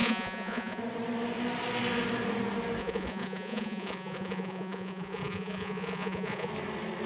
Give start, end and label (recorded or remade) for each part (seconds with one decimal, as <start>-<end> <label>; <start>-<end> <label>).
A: 0.0-0.8 remade; 0.8-2.8 recorded; 2.8-6.5 remade; 6.5-7.1 recorded